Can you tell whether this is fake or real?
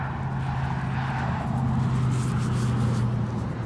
real